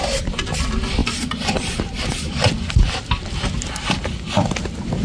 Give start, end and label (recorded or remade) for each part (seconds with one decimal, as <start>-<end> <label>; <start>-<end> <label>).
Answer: 0.0-5.0 remade